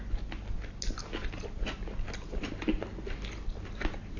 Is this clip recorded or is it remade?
recorded